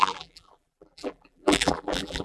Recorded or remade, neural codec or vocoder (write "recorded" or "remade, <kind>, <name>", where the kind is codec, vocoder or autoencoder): remade, vocoder, BigVGAN v2